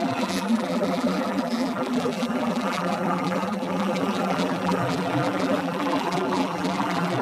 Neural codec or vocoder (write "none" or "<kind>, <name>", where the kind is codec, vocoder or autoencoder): vocoder, BigVGAN v2